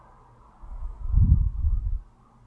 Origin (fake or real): real